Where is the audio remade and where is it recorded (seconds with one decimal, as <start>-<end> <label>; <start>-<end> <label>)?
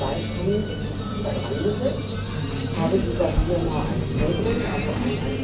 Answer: 0.0-0.6 recorded; 0.6-2.0 remade; 2.0-5.4 recorded